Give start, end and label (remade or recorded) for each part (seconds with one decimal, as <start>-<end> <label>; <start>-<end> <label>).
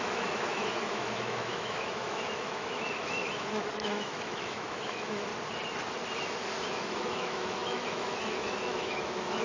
0.0-5.3 remade; 5.3-6.7 recorded; 6.7-9.4 remade